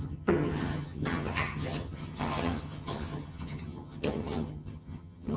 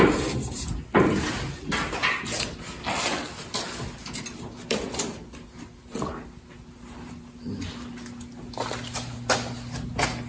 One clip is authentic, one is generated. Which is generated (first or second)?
first